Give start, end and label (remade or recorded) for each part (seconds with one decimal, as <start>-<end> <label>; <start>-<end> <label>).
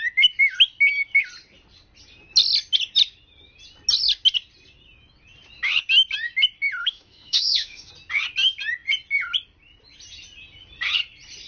0.0-6.8 recorded; 6.8-7.9 remade; 7.9-11.5 recorded